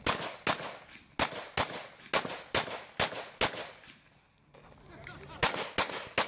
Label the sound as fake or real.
real